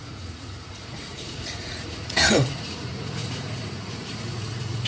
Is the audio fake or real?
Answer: fake